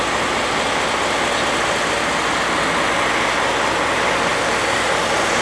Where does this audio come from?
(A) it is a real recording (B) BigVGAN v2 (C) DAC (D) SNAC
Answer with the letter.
A